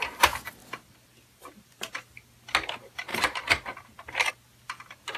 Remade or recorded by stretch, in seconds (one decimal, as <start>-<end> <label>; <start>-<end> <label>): 0.0-5.2 recorded